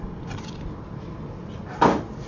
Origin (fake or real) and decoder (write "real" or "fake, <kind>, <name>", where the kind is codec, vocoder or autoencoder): real